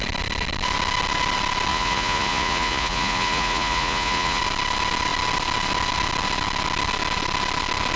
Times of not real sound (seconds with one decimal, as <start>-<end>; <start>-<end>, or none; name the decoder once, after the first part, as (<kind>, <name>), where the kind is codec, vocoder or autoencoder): 1.7-4.4 (vocoder, Vocos)